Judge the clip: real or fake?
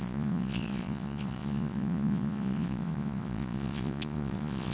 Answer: fake